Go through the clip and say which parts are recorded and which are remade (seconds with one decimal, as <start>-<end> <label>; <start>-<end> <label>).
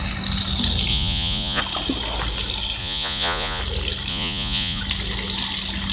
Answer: 0.0-0.9 recorded; 0.9-1.6 remade; 1.6-2.8 recorded; 2.8-3.6 remade; 3.6-4.1 recorded; 4.1-4.8 remade; 4.8-5.9 recorded